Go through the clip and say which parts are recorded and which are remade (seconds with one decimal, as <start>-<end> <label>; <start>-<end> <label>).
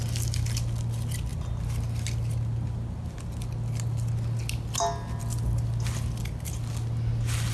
0.0-7.5 recorded